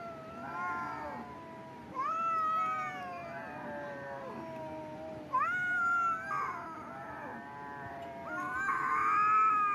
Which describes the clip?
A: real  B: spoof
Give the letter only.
A